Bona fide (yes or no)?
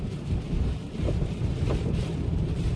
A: no